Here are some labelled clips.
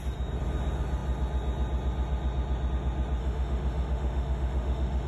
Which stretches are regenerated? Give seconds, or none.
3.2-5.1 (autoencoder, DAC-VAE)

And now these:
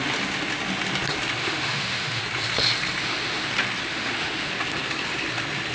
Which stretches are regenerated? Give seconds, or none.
1.4-2.2 (autoencoder, DAC-VAE); 3.0-3.5; 3.9-4.5